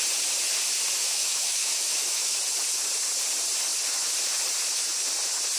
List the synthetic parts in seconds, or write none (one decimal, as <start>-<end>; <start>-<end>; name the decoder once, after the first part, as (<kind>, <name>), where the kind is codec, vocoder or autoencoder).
1.0-2.4 (autoencoder, DAC-VAE)